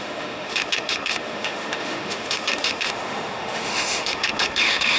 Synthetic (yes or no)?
yes